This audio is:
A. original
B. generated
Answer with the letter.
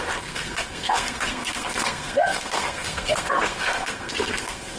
B